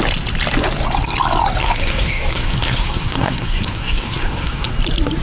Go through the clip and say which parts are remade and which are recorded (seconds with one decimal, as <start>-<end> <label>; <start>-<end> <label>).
0.0-1.6 recorded; 1.6-4.7 remade; 4.7-5.2 recorded